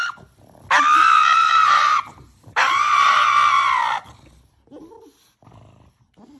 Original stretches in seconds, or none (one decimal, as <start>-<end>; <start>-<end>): 0.0-1.0; 3.8-6.4